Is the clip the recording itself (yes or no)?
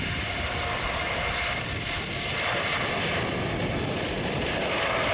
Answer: no